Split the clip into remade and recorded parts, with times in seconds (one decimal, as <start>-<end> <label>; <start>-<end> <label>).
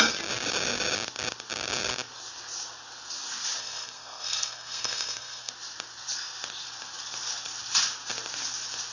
0.0-3.6 recorded; 3.6-5.5 remade; 5.5-8.9 recorded